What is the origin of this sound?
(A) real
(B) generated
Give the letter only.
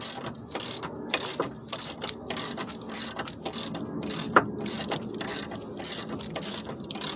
A